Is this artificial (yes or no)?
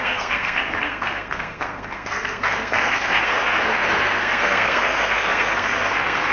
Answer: yes